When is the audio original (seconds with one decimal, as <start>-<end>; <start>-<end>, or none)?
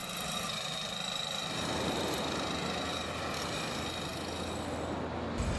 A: 0.0-5.6